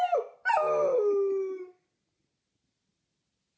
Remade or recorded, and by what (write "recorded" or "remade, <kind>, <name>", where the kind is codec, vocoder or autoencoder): recorded